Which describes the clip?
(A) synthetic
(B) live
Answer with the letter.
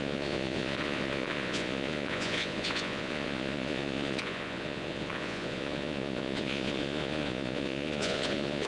A